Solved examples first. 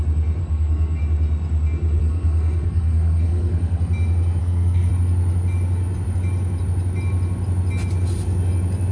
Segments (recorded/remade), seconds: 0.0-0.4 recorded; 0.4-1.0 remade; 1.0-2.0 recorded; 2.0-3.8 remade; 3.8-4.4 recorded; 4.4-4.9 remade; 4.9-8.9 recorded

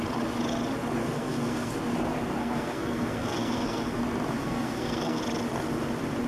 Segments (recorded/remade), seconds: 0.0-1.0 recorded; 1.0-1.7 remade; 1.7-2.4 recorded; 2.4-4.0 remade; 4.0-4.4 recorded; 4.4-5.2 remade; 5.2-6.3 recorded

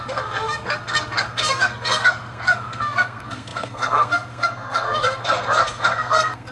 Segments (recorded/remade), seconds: 0.0-6.5 remade

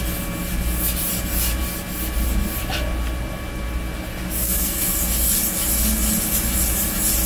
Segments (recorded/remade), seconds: 0.0-4.4 recorded; 4.4-5.0 remade; 5.0-7.3 recorded

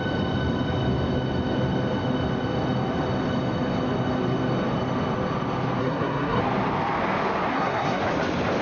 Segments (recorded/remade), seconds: 0.0-5.8 recorded; 5.8-6.4 remade; 6.4-7.5 recorded; 7.5-8.0 remade; 8.0-8.6 recorded